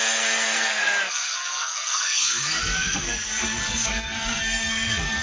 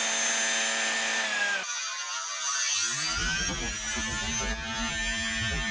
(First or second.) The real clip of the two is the second